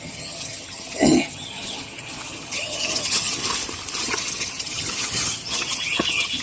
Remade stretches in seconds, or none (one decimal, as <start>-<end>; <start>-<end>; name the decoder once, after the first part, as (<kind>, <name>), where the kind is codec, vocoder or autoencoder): 0.0-3.4 (vocoder, HiFi-GAN); 4.0-6.4